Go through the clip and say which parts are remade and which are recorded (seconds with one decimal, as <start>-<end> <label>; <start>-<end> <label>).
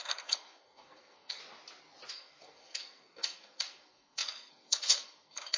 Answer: 0.0-1.4 remade; 1.4-2.1 recorded; 2.1-5.6 remade